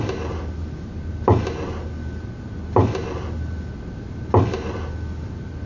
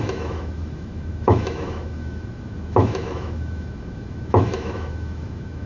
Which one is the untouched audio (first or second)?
first